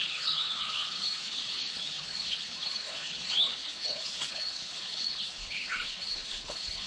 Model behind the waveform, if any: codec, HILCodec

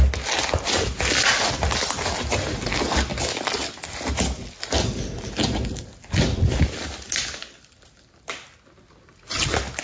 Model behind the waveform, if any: none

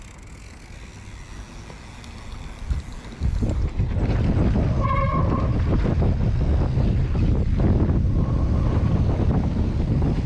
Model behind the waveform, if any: none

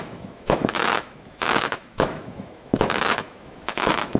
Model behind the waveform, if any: autoencoder, DAC-VAE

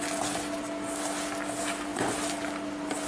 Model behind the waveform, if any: none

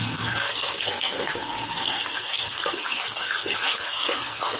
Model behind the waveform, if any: codec, SNAC